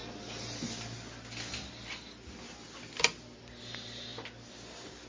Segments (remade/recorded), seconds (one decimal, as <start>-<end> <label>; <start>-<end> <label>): 0.0-5.1 recorded